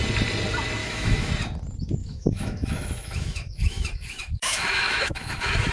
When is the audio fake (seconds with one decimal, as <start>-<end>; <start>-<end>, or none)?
0.8-1.3; 2.0-5.7